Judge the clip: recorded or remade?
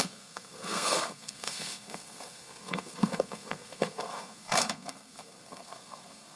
remade